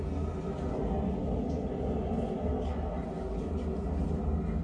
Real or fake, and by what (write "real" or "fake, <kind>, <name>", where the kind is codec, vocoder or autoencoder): real